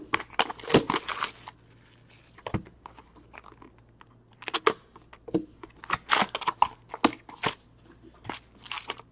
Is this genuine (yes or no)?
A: yes